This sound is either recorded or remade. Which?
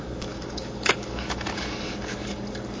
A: remade